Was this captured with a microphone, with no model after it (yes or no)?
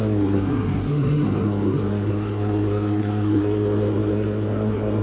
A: no